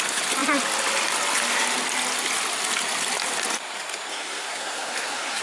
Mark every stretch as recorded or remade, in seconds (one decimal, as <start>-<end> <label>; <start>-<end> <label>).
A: 0.0-4.1 recorded; 4.1-5.4 remade